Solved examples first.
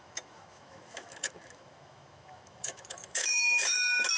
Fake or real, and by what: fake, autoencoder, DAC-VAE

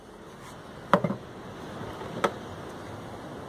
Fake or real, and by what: real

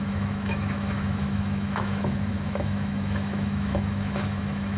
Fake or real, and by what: fake, autoencoder, DAC-VAE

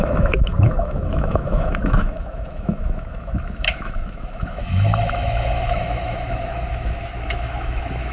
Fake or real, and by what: fake, autoencoder, DAC-VAE